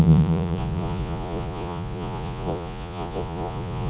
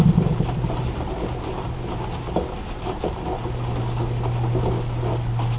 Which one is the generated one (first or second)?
first